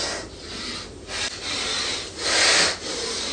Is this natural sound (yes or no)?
no